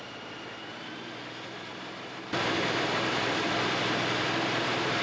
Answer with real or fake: fake